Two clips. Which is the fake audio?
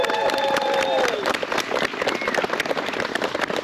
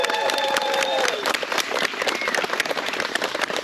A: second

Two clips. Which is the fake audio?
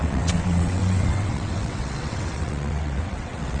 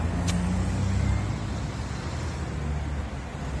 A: first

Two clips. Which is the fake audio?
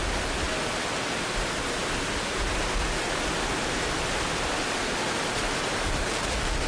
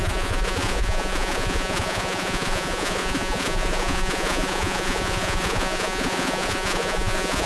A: second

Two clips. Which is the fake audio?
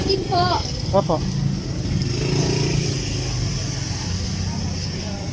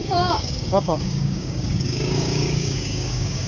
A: second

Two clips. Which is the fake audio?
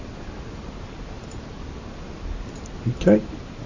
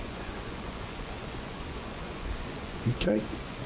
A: second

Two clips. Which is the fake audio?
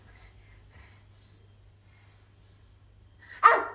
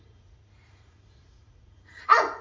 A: second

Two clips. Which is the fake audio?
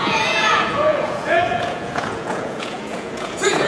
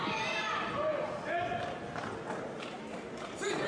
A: first